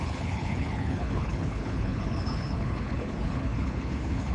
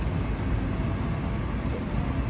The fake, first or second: first